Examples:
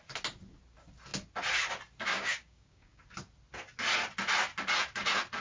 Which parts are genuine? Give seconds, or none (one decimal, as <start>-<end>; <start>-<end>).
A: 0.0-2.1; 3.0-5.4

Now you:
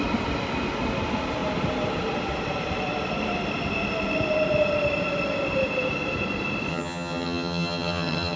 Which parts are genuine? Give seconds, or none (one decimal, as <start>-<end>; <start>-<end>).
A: 0.0-6.7

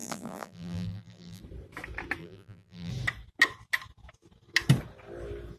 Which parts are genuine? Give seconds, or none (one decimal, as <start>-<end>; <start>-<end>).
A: 1.4-2.2; 2.9-5.6

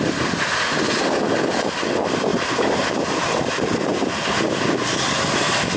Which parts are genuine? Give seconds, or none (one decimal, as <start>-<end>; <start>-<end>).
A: 0.0-5.8

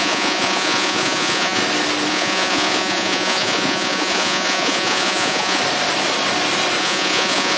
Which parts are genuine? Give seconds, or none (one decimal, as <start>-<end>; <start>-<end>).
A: 1.6-2.1; 5.6-6.8

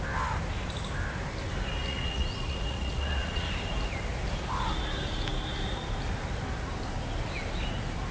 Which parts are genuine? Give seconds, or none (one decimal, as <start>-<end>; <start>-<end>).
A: 0.0-1.8; 3.5-8.1

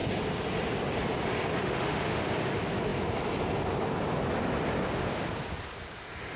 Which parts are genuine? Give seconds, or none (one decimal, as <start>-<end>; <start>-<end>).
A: 0.0-1.6; 2.3-6.4

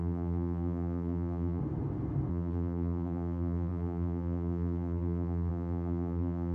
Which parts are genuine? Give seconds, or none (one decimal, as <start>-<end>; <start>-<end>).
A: 1.6-2.3